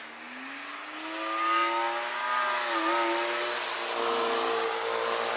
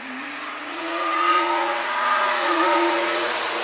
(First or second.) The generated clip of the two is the second